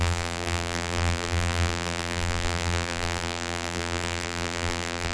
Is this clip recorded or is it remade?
remade